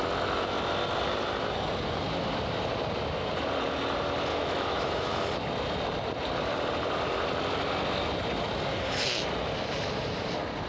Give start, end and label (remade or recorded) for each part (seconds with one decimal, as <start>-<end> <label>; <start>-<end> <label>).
0.0-4.3 recorded; 4.3-5.2 remade; 5.2-10.7 recorded